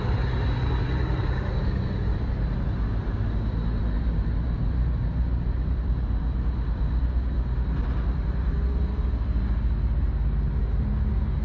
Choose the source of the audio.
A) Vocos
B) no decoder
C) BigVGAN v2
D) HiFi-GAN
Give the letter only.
B